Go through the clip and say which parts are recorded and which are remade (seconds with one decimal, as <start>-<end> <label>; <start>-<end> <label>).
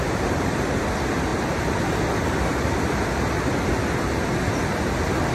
0.0-5.3 recorded